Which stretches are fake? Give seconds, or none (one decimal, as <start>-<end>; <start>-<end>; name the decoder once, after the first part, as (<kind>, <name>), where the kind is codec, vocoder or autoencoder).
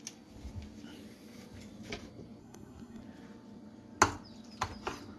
2.4-3.0 (codec, SNAC)